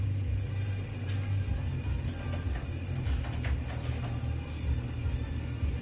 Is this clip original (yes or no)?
yes